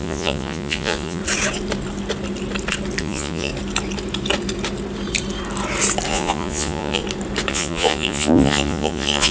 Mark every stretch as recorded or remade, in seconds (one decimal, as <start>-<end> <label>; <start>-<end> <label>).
0.0-1.2 remade; 1.2-3.0 recorded; 3.0-3.5 remade; 3.5-6.1 recorded; 6.1-7.0 remade; 7.0-7.5 recorded; 7.5-9.3 remade